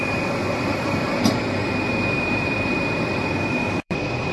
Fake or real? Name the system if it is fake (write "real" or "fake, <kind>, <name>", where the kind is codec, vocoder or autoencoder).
fake, vocoder, BigVGAN v2